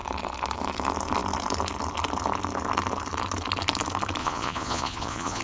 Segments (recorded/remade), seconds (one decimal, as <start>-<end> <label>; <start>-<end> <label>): 0.0-4.2 recorded; 4.2-5.4 remade